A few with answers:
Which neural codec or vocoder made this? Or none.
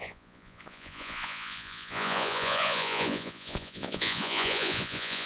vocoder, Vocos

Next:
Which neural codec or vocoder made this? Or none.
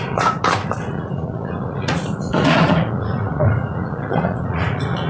vocoder, Vocos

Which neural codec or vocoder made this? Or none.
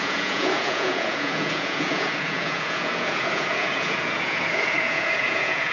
vocoder, Vocos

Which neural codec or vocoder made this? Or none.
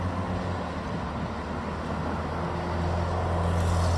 none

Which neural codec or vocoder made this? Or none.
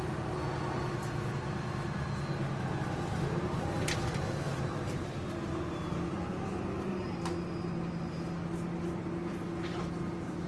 none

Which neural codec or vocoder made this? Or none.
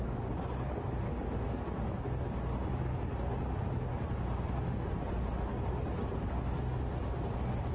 none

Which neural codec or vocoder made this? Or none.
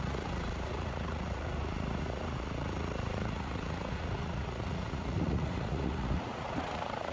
vocoder, Vocos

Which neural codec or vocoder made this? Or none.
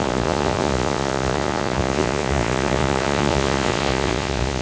vocoder, Vocos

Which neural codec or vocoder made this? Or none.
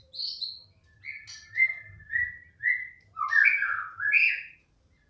none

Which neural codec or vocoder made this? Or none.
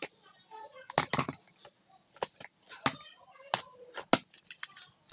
none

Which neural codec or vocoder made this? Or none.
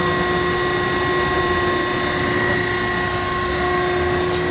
none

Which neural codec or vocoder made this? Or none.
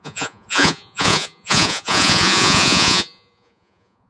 vocoder, Vocos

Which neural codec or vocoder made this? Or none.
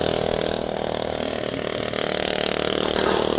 none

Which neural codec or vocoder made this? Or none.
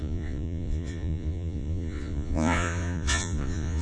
vocoder, Vocos